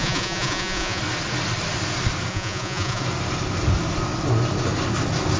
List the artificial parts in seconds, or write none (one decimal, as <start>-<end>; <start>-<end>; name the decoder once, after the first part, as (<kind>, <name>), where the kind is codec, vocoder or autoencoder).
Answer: 0.0-1.0 (vocoder, Vocos); 2.3-3.0